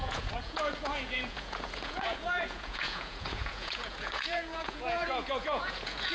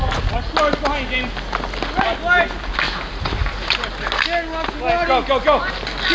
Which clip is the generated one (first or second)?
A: first